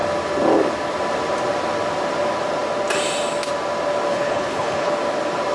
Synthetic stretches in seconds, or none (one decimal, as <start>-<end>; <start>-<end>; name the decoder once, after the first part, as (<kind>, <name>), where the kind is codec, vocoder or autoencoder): 4.1-4.9 (codec, HILCodec)